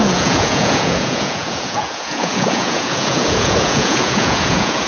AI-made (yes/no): yes